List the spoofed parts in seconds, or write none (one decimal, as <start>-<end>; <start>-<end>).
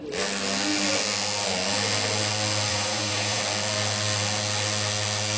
2.7-3.4